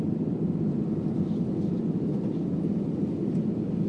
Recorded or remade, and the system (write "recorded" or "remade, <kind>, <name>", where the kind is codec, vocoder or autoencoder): recorded